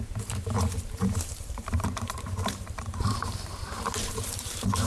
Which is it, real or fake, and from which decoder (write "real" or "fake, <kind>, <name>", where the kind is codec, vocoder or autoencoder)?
fake, vocoder, BigVGAN v2